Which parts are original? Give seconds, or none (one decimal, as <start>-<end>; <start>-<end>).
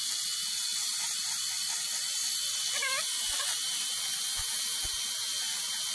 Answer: 0.0-5.9